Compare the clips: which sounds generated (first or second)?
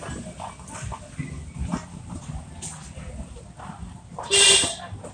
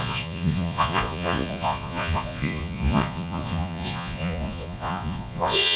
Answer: second